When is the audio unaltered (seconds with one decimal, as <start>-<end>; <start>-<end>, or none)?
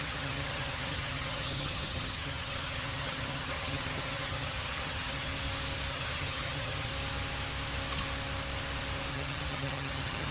5.3-5.9; 6.9-9.1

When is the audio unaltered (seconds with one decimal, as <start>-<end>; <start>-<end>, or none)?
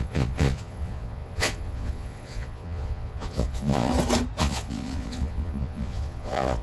3.9-4.4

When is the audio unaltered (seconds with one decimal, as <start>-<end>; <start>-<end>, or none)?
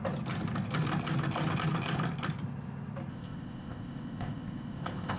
0.0-3.1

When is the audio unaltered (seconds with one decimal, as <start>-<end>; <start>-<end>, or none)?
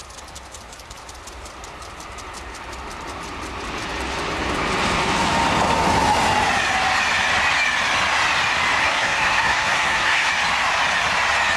0.0-8.8; 10.3-11.6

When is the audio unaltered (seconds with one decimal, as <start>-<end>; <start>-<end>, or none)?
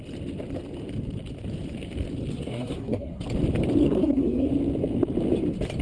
0.0-2.3; 3.2-3.8; 4.5-5.8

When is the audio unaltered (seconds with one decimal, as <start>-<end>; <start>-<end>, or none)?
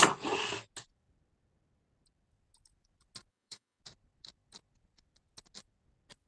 0.0-3.3; 3.8-6.3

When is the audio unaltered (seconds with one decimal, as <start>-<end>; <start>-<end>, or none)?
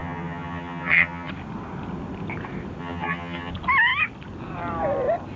1.3-2.8; 3.5-5.4